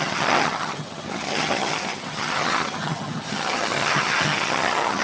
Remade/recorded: remade